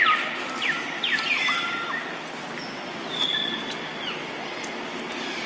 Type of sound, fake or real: real